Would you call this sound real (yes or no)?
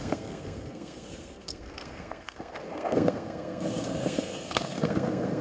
no